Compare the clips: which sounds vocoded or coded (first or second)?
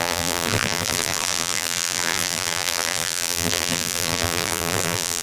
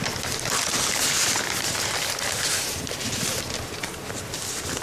first